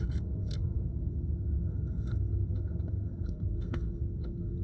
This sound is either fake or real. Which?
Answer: fake